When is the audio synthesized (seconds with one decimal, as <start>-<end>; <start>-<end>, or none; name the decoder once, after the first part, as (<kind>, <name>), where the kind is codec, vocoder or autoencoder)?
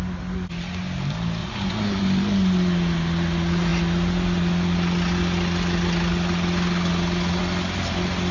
1.4-2.0 (vocoder, Vocos)